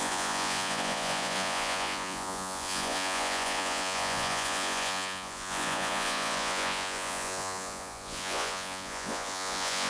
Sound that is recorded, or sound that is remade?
remade